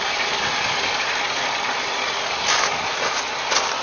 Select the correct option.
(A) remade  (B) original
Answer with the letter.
B